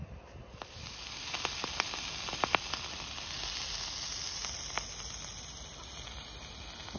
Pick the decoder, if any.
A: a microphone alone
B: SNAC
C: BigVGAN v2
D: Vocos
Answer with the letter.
A